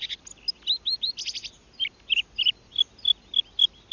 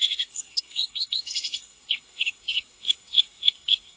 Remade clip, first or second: second